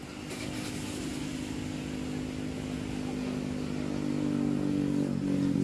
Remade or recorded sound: recorded